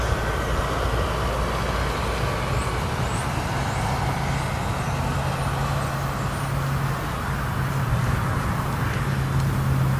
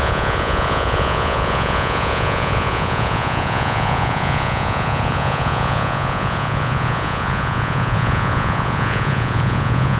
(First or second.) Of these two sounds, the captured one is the first